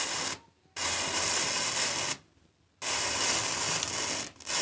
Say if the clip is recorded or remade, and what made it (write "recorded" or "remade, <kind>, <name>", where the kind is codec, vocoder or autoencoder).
recorded